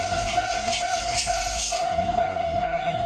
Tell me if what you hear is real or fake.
fake